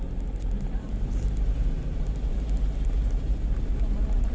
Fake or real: real